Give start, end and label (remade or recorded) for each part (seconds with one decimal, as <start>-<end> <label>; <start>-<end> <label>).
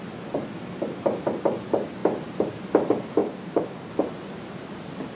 0.0-3.2 recorded; 3.2-3.9 remade; 3.9-5.1 recorded